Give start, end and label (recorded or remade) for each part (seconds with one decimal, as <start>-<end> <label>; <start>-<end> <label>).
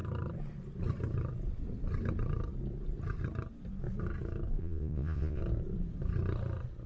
0.0-4.6 recorded; 4.6-5.4 remade; 5.4-6.9 recorded